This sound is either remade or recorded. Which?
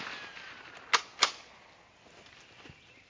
recorded